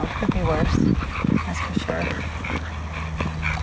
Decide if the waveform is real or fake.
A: real